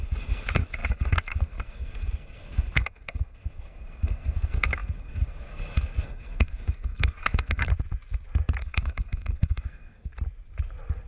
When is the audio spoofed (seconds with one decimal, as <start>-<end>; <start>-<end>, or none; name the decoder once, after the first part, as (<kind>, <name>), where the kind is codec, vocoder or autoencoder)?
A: 0.0-7.7 (codec, SNAC); 8.6-10.1